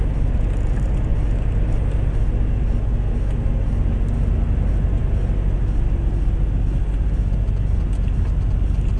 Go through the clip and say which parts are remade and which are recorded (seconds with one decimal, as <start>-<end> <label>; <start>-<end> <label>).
0.0-9.0 recorded